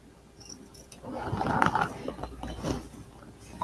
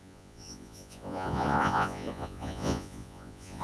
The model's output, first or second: second